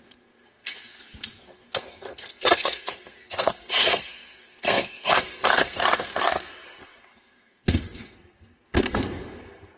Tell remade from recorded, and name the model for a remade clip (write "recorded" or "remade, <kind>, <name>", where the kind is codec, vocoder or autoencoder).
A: remade, codec, SNAC